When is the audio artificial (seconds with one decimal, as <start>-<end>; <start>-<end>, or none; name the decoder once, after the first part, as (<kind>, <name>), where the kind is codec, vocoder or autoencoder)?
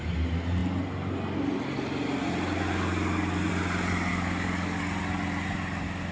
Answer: 4.1-4.8 (codec, DAC)